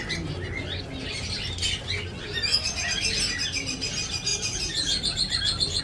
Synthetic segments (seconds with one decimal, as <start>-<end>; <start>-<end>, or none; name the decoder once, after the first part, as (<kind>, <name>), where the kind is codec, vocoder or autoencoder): 4.3-5.8 (vocoder, BigVGAN v2)

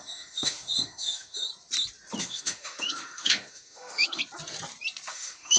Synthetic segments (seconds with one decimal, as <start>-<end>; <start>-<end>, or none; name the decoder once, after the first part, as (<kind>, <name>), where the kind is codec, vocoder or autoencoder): 0.0-1.5 (autoencoder, DAC-VAE); 2.2-4.2; 5.1-5.6

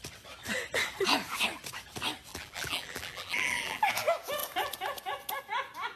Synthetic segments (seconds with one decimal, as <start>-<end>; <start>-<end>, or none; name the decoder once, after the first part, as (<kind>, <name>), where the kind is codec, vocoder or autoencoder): 2.3-3.8 (vocoder, BigVGAN v2)

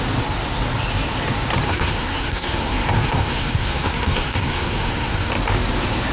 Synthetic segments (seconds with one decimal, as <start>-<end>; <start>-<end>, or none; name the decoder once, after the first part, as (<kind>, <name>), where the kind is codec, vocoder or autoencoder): 1.6-5.3 (codec, SNAC)

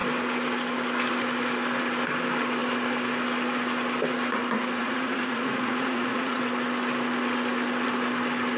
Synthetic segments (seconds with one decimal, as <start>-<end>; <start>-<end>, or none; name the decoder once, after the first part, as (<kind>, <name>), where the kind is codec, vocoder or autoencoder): 4.8-6.4 (vocoder, Vocos)

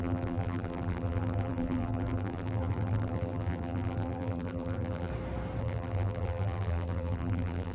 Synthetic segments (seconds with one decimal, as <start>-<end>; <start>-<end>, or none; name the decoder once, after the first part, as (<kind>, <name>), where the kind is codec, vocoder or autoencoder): 0.0-5.1 (vocoder, BigVGAN v2); 5.6-7.7